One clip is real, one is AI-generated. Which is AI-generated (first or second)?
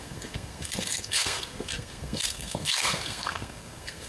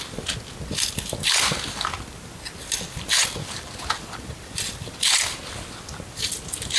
first